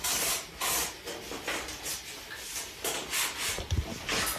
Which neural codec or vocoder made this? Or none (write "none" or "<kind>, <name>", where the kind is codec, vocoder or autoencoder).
none